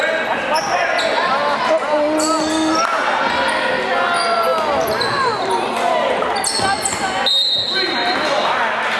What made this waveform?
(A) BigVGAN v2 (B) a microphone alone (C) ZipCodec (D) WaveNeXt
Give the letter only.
B